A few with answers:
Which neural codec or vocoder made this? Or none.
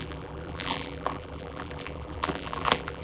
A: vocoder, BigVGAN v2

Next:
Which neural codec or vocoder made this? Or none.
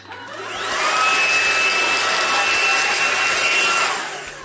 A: none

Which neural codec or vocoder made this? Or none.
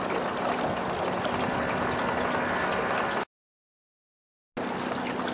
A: none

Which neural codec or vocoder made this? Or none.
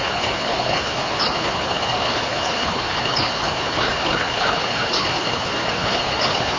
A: codec, HILCodec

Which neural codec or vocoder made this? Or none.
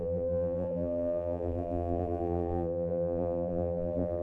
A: vocoder, BigVGAN v2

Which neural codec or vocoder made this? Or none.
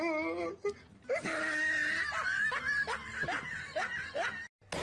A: none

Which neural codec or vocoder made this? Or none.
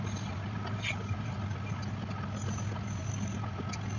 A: none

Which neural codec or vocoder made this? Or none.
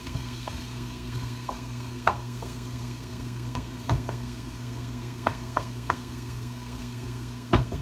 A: codec, SNAC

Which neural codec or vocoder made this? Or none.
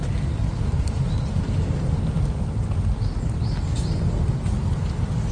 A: none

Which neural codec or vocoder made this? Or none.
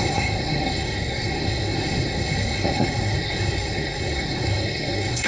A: codec, SNAC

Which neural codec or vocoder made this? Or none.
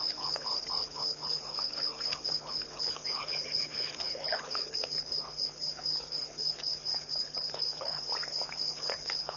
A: codec, HILCodec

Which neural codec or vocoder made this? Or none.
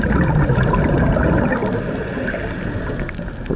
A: none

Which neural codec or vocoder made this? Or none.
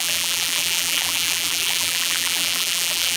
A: vocoder, BigVGAN v2